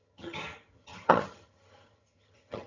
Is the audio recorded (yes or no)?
no